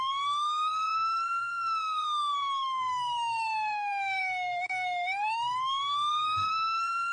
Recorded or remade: remade